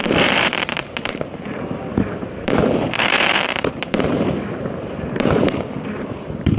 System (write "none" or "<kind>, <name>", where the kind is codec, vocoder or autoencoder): vocoder, BigVGAN v2